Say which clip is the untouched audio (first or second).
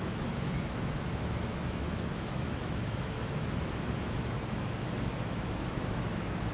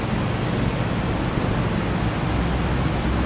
second